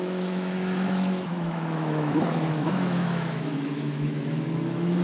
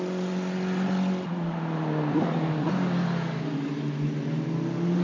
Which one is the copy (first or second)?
first